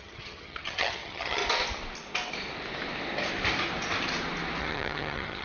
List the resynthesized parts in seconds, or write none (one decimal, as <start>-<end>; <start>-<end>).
0.0-1.4; 4.6-5.4